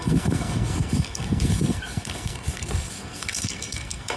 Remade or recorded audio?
remade